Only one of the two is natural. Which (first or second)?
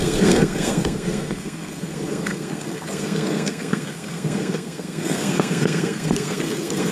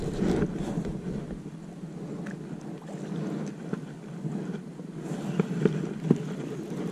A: second